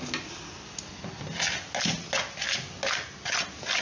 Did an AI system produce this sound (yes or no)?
no